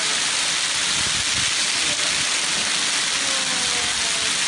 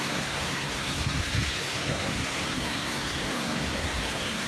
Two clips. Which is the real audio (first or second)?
first